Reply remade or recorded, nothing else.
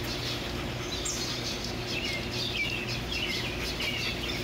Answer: recorded